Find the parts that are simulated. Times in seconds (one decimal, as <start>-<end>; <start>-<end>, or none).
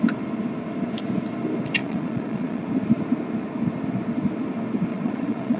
1.8-2.6; 4.9-5.6